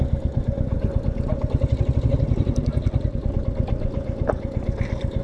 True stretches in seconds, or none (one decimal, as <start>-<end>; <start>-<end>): 0.0-5.2